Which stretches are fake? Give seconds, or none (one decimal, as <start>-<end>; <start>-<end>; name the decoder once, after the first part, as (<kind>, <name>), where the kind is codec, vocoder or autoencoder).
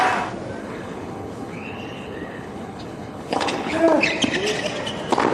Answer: 0.6-3.8 (codec, HILCodec)